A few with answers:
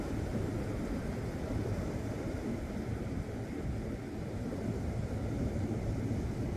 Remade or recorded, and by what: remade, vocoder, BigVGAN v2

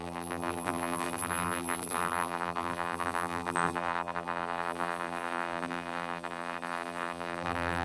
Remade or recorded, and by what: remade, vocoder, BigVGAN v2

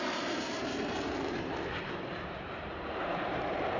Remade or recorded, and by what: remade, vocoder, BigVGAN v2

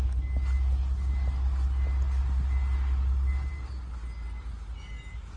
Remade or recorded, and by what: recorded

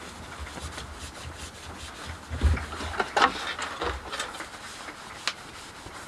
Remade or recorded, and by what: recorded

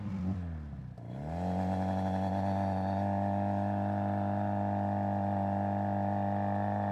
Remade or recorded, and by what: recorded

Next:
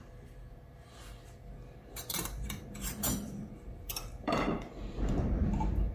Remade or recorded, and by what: remade, vocoder, BigVGAN v2